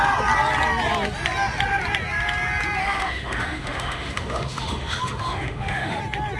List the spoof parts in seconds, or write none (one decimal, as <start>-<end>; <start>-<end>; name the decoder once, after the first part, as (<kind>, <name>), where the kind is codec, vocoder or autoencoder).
2.8-6.0 (autoencoder, DAC-VAE)